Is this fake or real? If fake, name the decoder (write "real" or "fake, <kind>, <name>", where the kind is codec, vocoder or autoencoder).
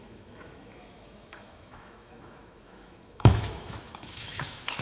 fake, autoencoder, DAC-VAE